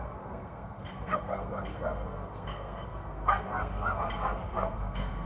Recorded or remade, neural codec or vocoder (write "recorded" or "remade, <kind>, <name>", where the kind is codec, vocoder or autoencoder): remade, codec, SNAC